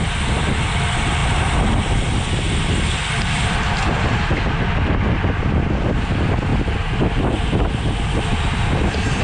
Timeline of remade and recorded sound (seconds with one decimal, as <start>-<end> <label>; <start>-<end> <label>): 0.0-9.2 recorded